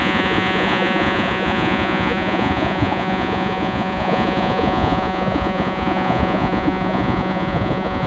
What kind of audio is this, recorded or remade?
remade